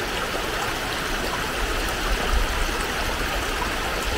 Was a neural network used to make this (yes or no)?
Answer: no